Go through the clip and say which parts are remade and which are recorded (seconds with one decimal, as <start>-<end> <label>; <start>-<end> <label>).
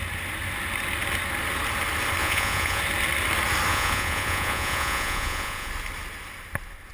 0.0-2.2 recorded; 2.2-2.8 remade; 2.8-3.7 recorded; 3.7-5.7 remade; 5.7-6.9 recorded